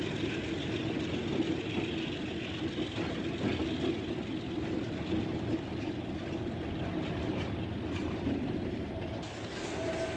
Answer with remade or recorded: recorded